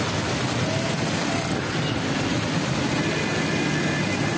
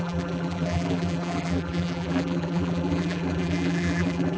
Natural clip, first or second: first